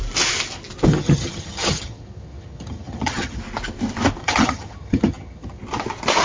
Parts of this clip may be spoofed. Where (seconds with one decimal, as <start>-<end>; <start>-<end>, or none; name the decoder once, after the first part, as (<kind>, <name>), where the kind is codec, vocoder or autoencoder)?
0.9-3.4 (vocoder, HiFi-GAN); 4.2-5.6